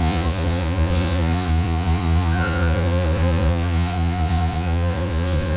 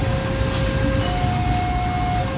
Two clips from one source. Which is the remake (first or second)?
first